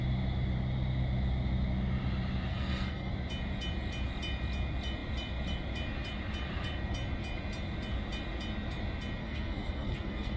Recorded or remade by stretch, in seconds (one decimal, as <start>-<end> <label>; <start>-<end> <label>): 0.0-2.5 recorded; 2.5-3.1 remade; 3.1-9.2 recorded; 9.2-10.4 remade